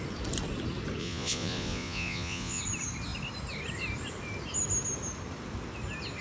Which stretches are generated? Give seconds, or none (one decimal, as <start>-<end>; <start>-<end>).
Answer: 1.0-2.6